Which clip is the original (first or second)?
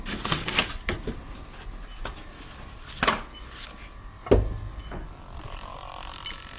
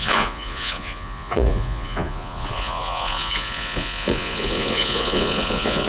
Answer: first